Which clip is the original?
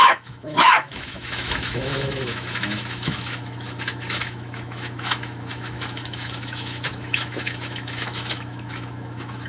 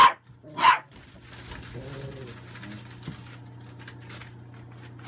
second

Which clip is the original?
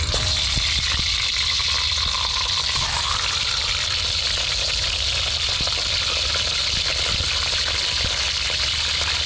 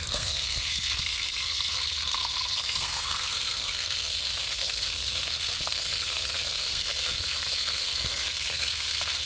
first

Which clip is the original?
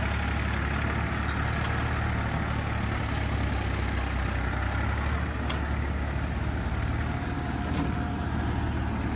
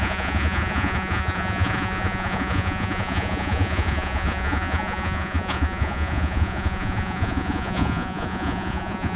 first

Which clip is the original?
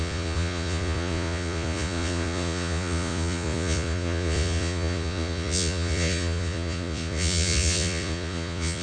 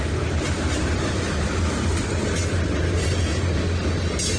second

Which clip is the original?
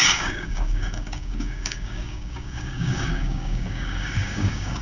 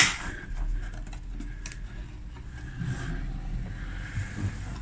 second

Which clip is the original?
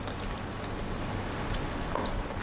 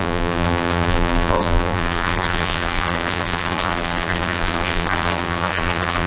first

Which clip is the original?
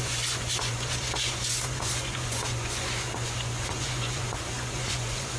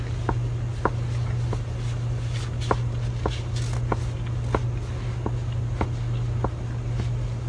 second